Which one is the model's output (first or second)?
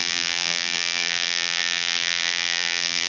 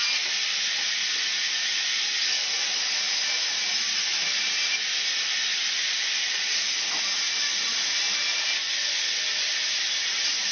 first